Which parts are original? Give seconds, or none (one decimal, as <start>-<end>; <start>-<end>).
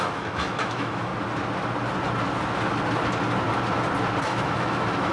1.1-4.2